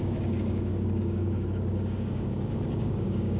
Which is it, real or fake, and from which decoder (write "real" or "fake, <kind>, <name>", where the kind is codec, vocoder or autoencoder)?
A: fake, codec, DAC